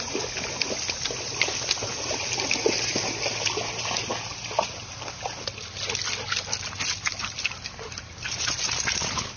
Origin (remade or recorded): recorded